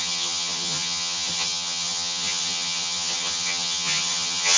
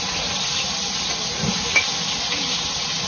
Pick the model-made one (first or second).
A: first